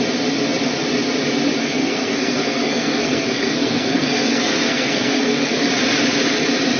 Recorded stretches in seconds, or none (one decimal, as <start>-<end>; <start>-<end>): 0.0-1.6; 5.7-6.8